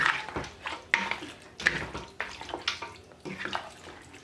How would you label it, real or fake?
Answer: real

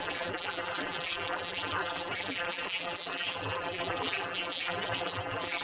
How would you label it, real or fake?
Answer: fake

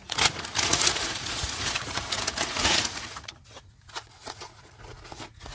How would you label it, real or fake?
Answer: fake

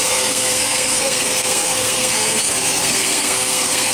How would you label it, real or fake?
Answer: fake